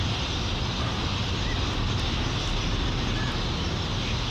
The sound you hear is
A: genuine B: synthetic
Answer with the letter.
A